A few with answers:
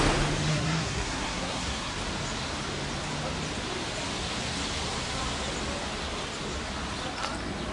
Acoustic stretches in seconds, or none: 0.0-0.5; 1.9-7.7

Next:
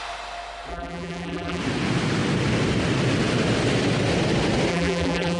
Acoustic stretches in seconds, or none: 0.0-0.7; 1.6-4.7

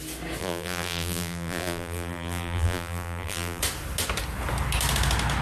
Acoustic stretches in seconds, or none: 0.0-0.4; 3.6-5.4

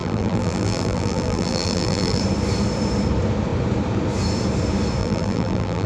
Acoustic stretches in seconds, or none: 2.2-5.0

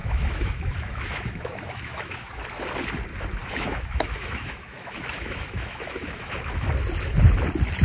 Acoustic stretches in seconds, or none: 2.5-3.4; 6.7-7.8

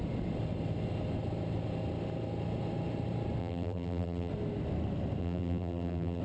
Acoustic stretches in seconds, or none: 0.0-3.4; 4.3-5.2